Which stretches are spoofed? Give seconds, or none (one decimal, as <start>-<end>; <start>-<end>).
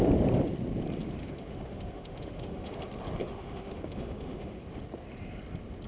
1.2-2.7; 3.2-4.6